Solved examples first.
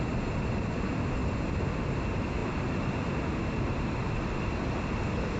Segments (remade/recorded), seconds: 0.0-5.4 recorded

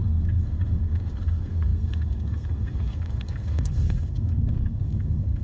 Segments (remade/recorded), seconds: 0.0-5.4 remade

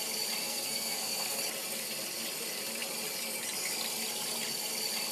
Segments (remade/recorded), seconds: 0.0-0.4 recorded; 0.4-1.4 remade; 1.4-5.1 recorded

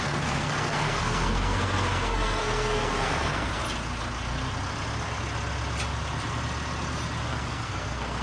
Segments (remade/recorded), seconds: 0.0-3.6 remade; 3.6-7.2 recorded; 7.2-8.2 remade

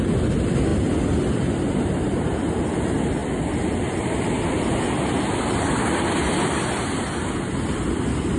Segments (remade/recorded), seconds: 0.0-8.4 recorded

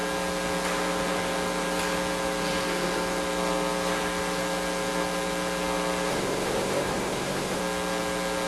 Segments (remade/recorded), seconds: 0.0-6.1 recorded; 6.1-7.6 remade; 7.6-8.5 recorded

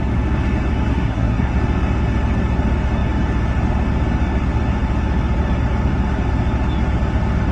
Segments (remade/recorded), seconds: 0.0-0.9 recorded; 0.9-1.5 remade; 1.5-7.5 recorded

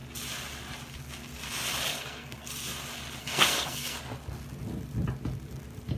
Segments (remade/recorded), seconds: 0.0-1.9 recorded; 1.9-2.5 remade; 2.5-3.2 recorded; 3.2-4.0 remade; 4.0-6.0 recorded